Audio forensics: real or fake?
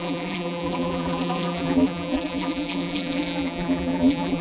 fake